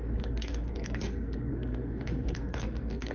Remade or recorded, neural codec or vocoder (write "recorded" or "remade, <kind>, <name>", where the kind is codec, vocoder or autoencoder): remade, codec, SNAC